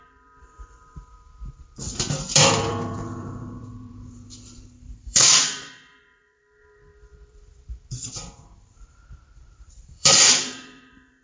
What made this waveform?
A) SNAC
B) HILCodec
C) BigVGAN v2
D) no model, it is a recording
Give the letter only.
C